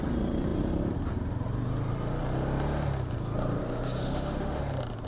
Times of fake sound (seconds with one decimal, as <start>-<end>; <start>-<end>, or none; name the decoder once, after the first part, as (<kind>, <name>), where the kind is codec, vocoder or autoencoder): 4.0-4.6 (autoencoder, DAC-VAE)